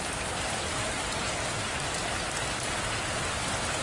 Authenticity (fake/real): real